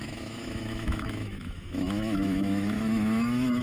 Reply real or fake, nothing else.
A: fake